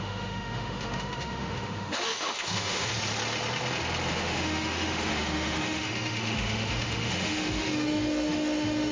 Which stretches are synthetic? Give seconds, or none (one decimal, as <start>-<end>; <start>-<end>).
0.0-2.9; 4.1-8.9